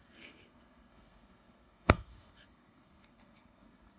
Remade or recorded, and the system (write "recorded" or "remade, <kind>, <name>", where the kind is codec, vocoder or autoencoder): remade, codec, SNAC